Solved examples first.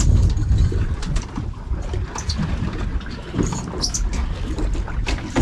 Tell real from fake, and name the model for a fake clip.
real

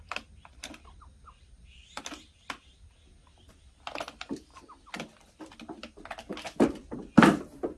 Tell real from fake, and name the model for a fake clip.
real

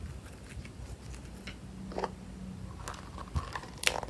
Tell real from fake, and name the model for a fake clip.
real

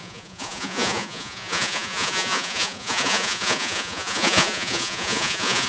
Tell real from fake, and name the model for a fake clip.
fake, vocoder, Vocos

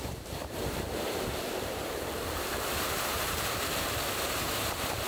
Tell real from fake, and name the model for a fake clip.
fake, vocoder, BigVGAN v2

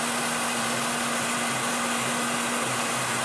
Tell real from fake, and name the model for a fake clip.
real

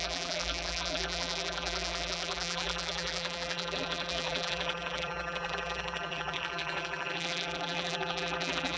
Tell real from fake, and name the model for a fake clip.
fake, vocoder, BigVGAN v2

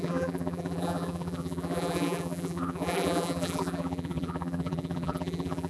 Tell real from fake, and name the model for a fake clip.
fake, vocoder, BigVGAN v2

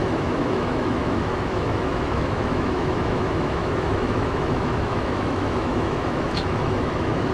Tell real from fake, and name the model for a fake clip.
fake, autoencoder, DAC-VAE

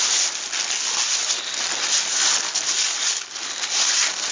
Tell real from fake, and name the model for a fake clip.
real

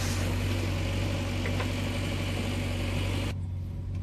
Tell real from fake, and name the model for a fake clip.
real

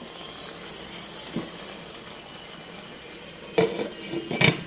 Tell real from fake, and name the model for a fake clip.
real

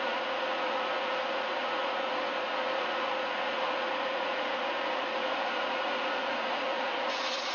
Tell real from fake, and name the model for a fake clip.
fake, vocoder, Vocos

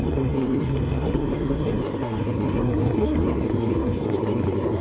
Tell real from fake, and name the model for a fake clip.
fake, codec, SNAC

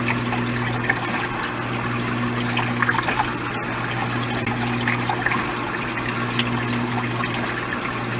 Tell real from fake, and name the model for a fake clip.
real